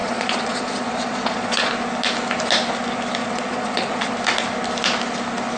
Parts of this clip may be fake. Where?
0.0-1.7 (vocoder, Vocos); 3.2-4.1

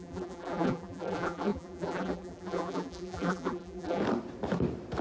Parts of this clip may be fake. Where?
0.0-4.0 (vocoder, BigVGAN v2)

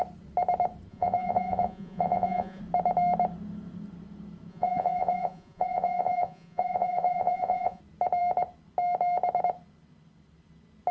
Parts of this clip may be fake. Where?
0.9-2.6 (vocoder, Vocos); 4.5-7.8

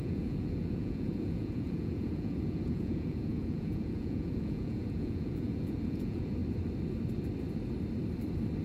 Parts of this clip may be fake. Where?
0.0-6.4 (vocoder, Vocos)

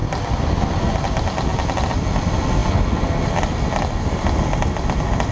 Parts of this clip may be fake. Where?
none

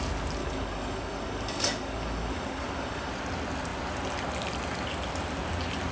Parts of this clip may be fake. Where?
0.4-3.1 (codec, DAC)

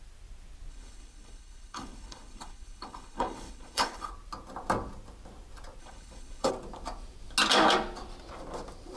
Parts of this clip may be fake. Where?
0.7-4.1 (codec, HILCodec); 5.8-6.5